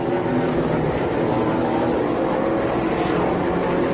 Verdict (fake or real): real